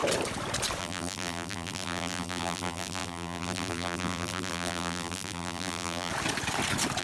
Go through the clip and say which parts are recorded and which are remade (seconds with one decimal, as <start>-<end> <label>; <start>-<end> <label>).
0.0-0.8 recorded; 0.8-6.1 remade; 6.1-7.0 recorded